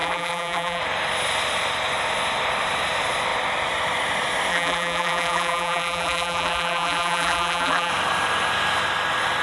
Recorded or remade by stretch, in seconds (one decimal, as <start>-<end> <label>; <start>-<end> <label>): 0.0-0.8 remade; 0.8-4.5 recorded; 4.5-7.9 remade; 7.9-9.4 recorded